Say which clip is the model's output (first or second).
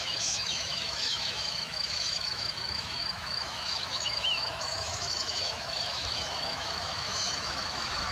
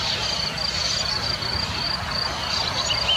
first